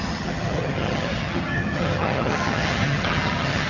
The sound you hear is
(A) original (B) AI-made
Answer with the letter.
B